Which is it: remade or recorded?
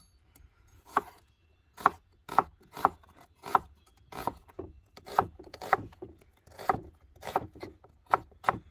remade